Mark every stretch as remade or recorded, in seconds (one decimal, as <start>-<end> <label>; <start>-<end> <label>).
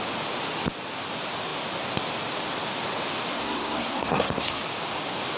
0.0-3.3 recorded; 3.3-4.6 remade; 4.6-5.4 recorded